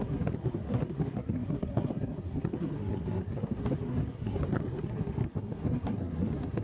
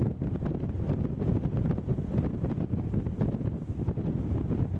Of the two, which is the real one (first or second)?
second